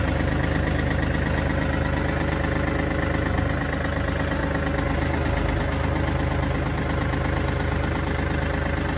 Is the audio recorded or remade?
recorded